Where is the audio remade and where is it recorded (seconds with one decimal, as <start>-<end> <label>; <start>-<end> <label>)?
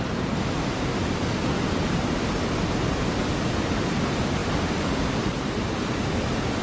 0.0-6.6 recorded